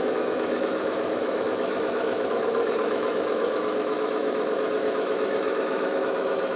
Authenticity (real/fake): fake